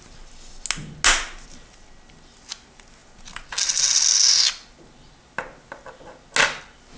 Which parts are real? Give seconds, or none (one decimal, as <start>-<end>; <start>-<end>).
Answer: 0.0-7.0